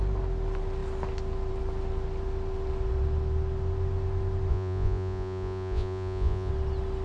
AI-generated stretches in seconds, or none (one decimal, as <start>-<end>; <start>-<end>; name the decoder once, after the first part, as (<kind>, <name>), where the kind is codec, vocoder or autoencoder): 4.5-6.5 (vocoder, Vocos)